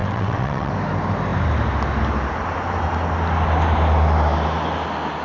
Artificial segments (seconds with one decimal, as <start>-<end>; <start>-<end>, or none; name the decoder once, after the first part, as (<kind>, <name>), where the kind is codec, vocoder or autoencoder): 0.0-0.7 (vocoder, WaveNeXt)